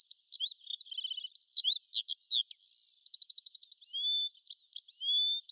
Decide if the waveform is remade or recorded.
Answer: recorded